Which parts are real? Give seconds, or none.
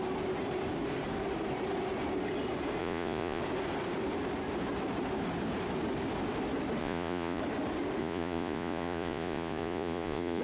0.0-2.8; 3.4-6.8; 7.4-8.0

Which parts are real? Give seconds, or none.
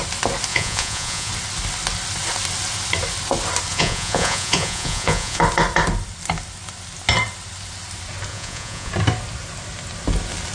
0.0-0.5; 1.3-3.7; 5.4-8.3; 8.9-10.5